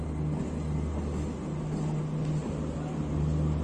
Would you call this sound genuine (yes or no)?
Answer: yes